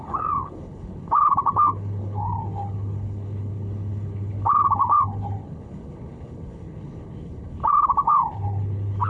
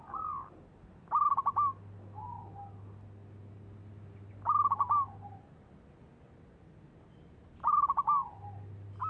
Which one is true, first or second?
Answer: second